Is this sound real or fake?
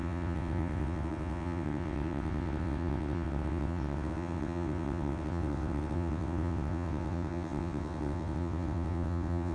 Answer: fake